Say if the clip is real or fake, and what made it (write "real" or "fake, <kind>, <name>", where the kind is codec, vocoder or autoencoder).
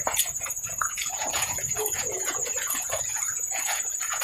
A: fake, vocoder, Vocos